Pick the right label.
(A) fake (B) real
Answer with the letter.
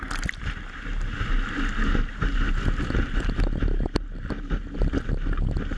B